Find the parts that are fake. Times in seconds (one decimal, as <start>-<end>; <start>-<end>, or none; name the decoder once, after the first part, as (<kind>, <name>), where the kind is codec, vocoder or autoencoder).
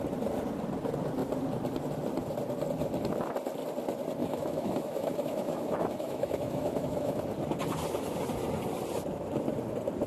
4.2-7.2 (autoencoder, DAC-VAE)